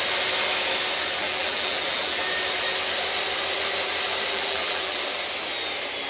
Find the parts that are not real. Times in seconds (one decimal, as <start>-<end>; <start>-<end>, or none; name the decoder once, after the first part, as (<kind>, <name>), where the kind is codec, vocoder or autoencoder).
1.2-2.2 (vocoder, BigVGAN v2); 4.3-5.0